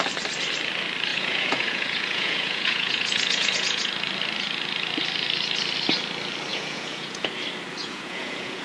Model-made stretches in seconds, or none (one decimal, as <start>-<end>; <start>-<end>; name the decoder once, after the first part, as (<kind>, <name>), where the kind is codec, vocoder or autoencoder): 1.1-3.9 (vocoder, Vocos); 6.5-7.3; 7.8-8.6